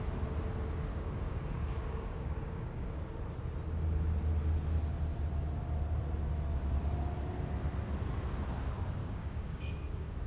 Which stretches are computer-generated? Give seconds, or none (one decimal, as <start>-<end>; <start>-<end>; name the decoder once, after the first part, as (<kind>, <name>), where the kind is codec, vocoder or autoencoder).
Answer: 0.9-3.1 (codec, DAC); 9.0-10.3